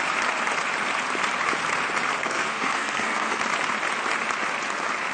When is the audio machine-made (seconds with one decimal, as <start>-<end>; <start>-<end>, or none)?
2.2-3.4